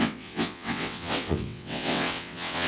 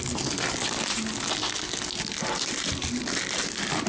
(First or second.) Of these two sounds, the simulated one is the first